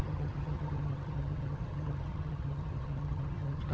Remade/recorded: remade